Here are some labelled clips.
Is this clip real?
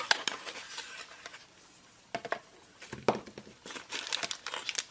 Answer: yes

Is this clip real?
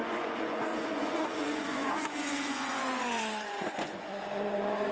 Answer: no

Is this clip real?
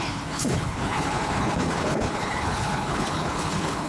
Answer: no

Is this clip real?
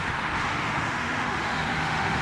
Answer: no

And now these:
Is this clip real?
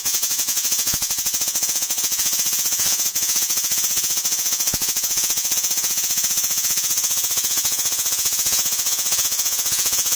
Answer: no